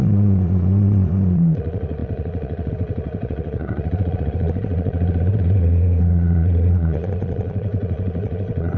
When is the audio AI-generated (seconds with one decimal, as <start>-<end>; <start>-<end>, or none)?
0.0-8.8